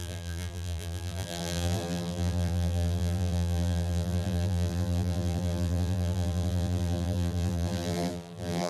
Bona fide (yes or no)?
no